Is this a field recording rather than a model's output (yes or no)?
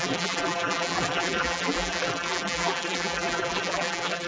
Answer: no